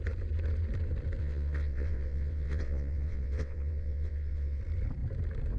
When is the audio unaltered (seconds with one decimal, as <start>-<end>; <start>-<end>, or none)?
0.0-1.2; 4.6-5.6

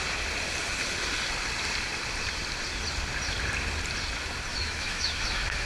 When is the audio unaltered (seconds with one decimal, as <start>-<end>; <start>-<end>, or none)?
0.0-4.5